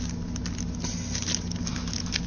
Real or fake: real